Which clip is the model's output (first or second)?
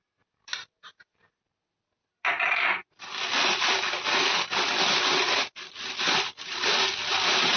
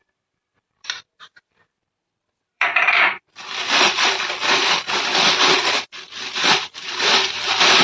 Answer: second